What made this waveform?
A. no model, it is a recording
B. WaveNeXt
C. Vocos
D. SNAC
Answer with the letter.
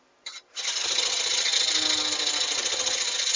A